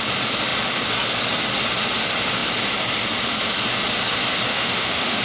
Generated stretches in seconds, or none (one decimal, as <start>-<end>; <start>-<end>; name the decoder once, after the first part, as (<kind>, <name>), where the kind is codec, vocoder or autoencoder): 4.5-5.2 (autoencoder, DAC-VAE)